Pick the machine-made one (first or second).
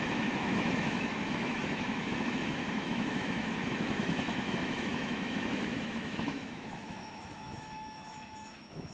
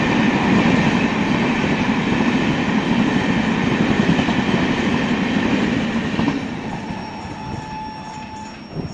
first